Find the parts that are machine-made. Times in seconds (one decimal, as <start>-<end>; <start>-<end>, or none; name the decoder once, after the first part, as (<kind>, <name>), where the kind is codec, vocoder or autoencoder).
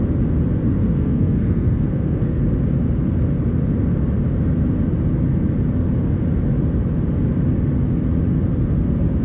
0.7-2.4 (codec, SNAC)